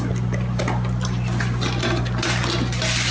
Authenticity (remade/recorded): recorded